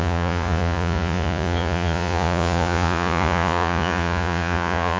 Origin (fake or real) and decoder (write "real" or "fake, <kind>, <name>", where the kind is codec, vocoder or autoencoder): fake, vocoder, Vocos